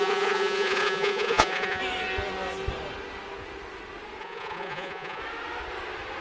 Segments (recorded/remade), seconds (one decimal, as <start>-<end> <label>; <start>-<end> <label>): 0.0-1.8 remade; 1.8-4.2 recorded; 4.2-5.2 remade; 5.2-6.2 recorded